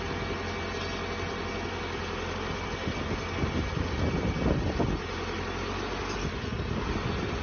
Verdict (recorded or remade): recorded